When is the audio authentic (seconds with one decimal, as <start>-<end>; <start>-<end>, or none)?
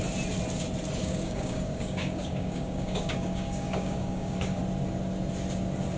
0.0-1.0; 4.6-6.0